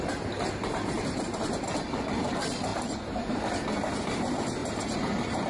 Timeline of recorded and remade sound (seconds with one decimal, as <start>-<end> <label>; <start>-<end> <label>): 0.0-2.7 recorded; 2.7-3.4 remade; 3.4-4.6 recorded; 4.6-5.5 remade